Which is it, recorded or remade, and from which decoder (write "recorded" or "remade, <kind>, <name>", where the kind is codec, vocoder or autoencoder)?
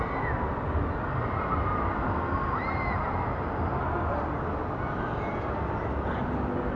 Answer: recorded